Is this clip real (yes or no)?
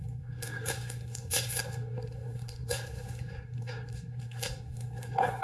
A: no